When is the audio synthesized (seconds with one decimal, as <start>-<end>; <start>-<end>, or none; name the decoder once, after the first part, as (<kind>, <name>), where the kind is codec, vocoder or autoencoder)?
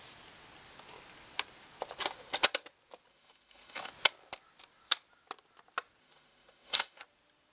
3.1-3.9 (autoencoder, DAC-VAE); 6.0-7.0